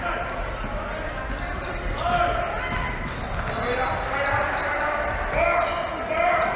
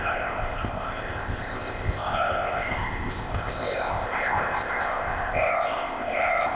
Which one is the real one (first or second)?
first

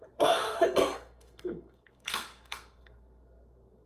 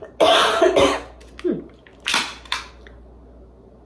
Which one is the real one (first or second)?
second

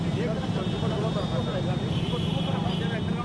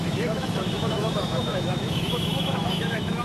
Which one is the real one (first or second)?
first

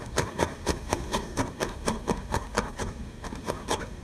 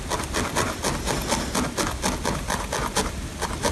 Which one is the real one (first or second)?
second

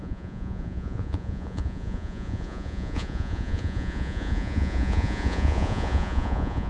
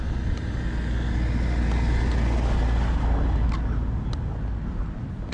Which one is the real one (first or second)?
second